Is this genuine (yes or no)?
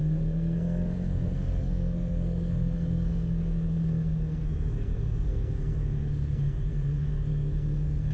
no